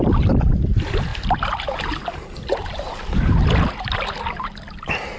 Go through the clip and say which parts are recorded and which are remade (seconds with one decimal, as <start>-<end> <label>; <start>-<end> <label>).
0.0-5.2 recorded

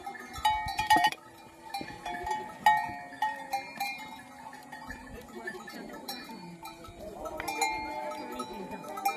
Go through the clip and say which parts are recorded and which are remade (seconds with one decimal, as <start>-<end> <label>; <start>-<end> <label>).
0.0-0.7 recorded; 0.7-1.6 remade; 1.6-3.2 recorded; 3.2-7.3 remade; 7.3-9.2 recorded

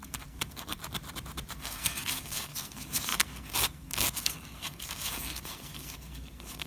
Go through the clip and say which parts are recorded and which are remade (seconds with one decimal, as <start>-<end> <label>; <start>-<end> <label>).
0.0-0.8 remade; 0.8-1.5 recorded; 1.5-6.7 remade

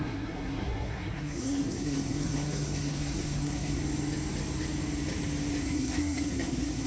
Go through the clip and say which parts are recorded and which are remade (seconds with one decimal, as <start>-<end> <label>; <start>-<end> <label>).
0.0-3.8 remade; 3.8-5.6 recorded; 5.6-6.9 remade

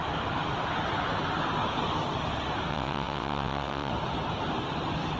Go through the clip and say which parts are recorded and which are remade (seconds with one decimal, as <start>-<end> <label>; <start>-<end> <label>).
0.0-2.7 recorded; 2.7-3.9 remade; 3.9-5.2 recorded